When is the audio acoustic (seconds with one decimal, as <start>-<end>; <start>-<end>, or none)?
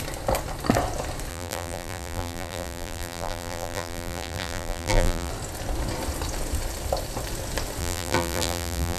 0.0-1.3; 5.3-7.8